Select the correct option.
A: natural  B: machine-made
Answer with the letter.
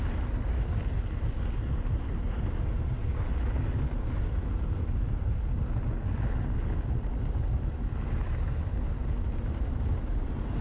A